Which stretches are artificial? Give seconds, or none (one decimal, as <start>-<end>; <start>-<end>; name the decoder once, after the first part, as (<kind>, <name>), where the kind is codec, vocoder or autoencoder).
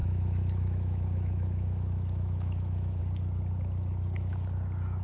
0.0-3.0 (autoencoder, DAC-VAE)